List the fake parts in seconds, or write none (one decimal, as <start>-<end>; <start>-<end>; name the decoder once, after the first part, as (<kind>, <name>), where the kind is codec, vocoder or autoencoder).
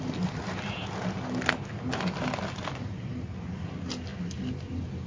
none